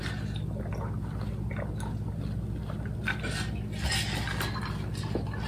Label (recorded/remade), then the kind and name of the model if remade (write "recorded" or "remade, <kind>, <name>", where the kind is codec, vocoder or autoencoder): recorded